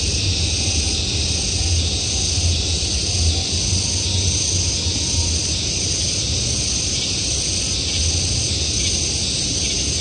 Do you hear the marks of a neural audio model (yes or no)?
no